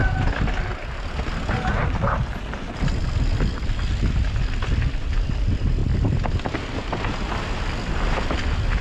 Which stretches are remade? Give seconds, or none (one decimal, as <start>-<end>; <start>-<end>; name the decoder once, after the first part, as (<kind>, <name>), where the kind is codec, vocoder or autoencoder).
none